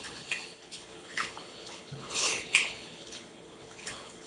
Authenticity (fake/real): fake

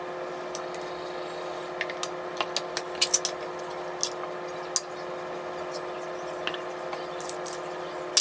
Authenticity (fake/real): real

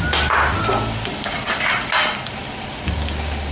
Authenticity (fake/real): real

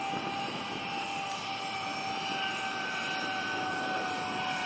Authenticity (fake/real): real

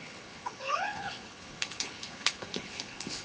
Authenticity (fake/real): fake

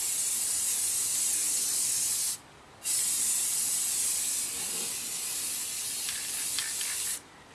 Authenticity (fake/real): real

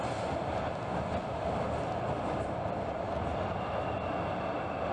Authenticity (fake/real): real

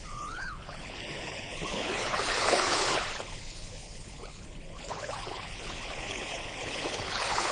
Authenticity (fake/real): fake